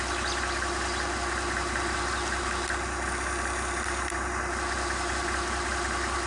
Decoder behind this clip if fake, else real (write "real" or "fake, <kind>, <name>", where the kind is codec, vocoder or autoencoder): real